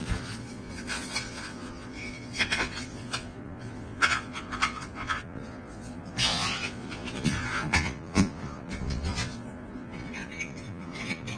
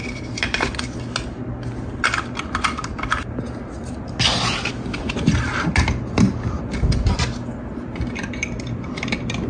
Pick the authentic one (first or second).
second